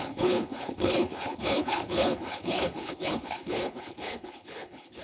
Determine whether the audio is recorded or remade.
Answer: remade